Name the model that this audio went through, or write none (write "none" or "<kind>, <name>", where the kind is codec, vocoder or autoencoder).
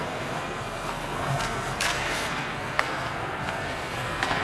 codec, SNAC